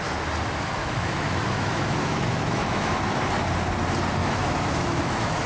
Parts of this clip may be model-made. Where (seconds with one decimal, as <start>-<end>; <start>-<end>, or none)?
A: 0.8-3.0; 4.2-5.5